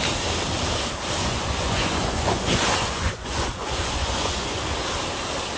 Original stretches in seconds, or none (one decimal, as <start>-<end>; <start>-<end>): 0.0-1.2; 4.6-5.6